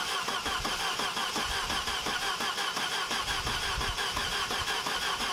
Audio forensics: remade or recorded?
recorded